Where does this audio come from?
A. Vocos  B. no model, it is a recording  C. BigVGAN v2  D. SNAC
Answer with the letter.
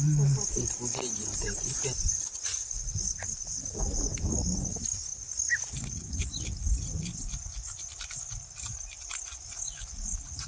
B